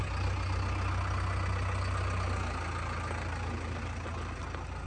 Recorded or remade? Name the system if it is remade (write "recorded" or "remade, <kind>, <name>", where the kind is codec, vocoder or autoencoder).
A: recorded